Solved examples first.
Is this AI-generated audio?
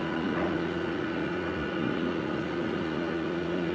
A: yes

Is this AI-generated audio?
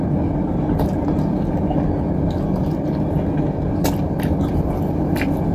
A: no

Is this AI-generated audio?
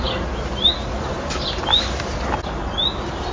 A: no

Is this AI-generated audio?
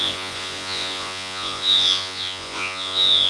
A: yes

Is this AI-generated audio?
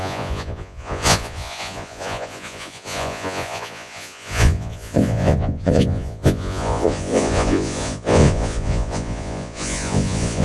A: yes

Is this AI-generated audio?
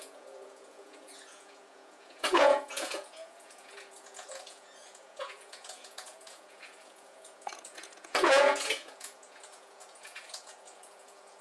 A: yes